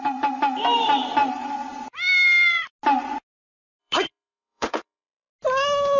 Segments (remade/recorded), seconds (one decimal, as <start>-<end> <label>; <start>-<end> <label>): 0.0-3.8 recorded; 3.8-5.3 remade; 5.3-6.0 recorded